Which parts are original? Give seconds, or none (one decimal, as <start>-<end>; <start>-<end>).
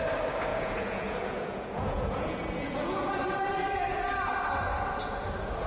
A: 0.0-0.5; 3.2-5.7